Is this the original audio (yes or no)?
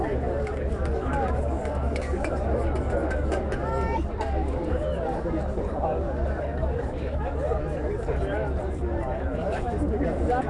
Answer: no